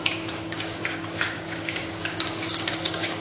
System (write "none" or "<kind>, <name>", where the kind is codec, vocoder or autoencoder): codec, DAC